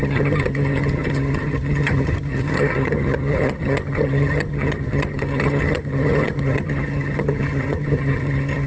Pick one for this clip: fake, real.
fake